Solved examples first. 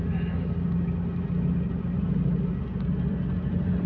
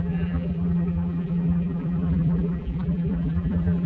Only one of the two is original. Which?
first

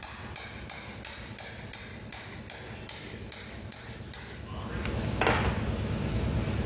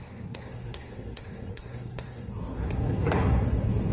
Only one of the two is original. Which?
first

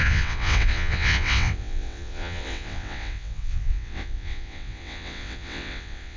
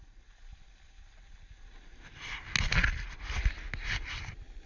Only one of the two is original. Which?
second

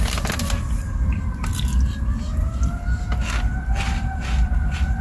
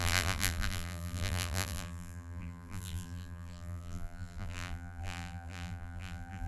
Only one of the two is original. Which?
first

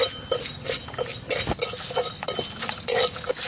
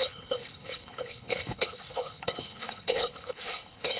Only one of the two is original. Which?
first